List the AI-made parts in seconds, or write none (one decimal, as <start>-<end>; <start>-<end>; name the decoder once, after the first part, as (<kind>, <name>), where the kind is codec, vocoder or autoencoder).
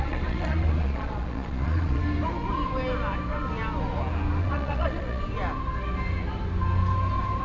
0.0-2.0 (vocoder, Vocos); 4.4-5.2